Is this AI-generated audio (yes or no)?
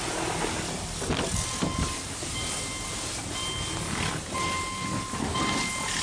no